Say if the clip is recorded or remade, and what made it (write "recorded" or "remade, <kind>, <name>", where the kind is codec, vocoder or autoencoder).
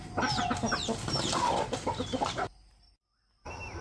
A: recorded